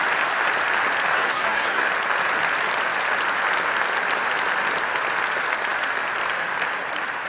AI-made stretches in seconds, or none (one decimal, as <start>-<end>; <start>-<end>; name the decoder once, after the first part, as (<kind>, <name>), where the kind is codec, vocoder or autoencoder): 1.1-1.9 (codec, SNAC)